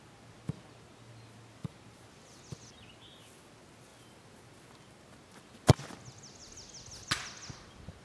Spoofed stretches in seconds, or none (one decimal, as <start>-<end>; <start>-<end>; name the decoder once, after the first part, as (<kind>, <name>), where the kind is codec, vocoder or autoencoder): 1.6-2.1 (vocoder, BigVGAN v2)